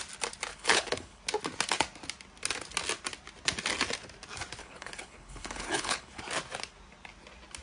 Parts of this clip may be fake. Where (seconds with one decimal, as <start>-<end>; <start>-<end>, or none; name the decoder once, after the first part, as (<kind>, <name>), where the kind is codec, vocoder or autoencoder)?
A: 0.5-1.2 (codec, HILCodec); 4.6-6.2